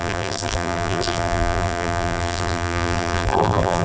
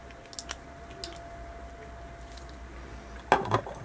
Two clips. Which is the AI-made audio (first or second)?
first